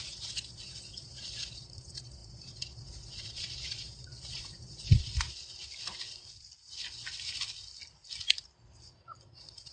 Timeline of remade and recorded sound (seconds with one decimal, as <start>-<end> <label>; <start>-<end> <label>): 0.0-5.1 remade; 5.1-8.9 recorded; 8.9-9.7 remade